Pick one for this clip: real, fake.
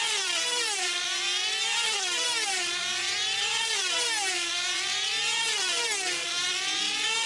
fake